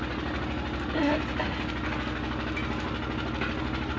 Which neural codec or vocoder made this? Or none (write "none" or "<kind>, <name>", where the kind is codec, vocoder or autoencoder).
none